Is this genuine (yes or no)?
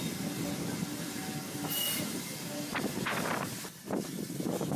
yes